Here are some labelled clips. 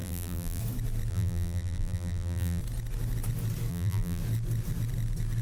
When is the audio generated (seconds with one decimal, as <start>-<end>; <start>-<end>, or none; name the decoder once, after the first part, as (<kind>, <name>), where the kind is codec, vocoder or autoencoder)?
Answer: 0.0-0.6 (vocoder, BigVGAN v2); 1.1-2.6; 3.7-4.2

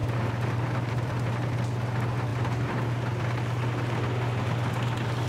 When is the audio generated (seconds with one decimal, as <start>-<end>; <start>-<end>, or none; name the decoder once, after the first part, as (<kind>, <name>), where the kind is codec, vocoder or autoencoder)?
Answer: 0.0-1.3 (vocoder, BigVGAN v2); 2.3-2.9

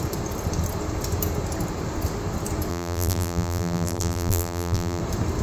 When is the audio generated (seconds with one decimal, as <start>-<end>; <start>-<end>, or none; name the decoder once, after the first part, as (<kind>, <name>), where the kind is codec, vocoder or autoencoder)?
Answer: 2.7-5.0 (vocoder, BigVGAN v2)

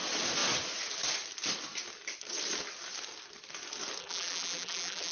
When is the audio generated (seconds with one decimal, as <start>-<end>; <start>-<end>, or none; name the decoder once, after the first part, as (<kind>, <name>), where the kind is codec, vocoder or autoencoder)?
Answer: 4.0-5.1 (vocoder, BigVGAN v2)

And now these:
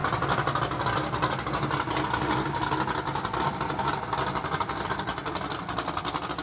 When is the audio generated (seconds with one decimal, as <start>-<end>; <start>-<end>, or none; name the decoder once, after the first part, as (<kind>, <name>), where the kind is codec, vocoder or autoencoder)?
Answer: 0.0-0.6 (vocoder, BigVGAN v2)